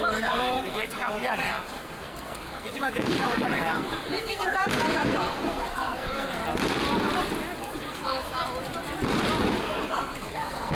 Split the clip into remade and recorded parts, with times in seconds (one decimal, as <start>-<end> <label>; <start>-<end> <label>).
0.0-6.4 remade; 6.4-7.6 recorded; 7.6-8.4 remade; 8.4-9.6 recorded; 9.6-10.7 remade